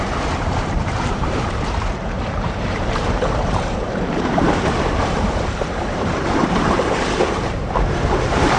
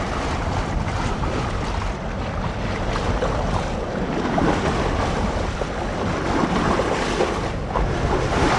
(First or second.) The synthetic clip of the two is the first